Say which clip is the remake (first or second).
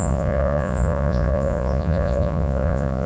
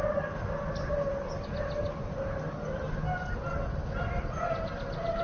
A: first